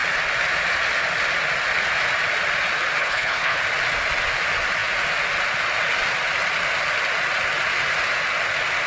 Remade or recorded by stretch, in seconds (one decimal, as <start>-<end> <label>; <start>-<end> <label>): 0.0-3.0 recorded; 3.0-3.6 remade; 3.6-8.9 recorded